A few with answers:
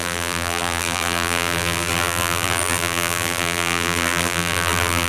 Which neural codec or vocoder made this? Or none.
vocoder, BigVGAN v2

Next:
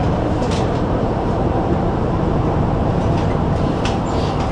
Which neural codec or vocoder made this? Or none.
vocoder, BigVGAN v2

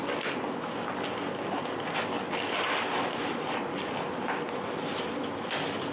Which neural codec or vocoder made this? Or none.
none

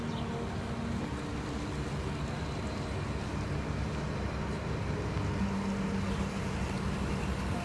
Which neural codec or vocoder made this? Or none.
none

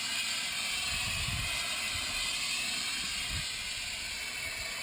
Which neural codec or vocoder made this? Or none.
none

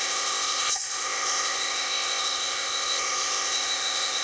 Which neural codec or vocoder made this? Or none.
codec, ZipCodec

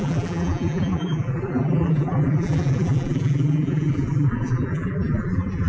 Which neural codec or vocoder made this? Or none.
vocoder, BigVGAN v2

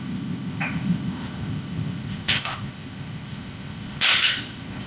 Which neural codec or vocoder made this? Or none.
codec, ZipCodec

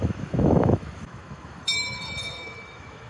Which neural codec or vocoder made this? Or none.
autoencoder, DAC-VAE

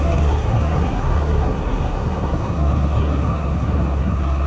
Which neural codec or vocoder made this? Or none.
codec, SNAC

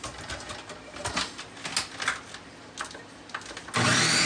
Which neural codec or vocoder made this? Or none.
none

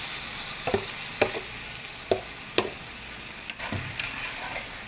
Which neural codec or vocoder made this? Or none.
none